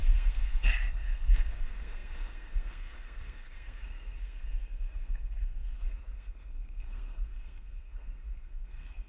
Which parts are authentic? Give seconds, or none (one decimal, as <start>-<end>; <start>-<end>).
none